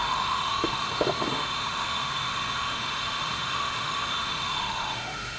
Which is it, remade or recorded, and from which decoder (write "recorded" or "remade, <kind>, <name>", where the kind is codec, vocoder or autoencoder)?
remade, autoencoder, DAC-VAE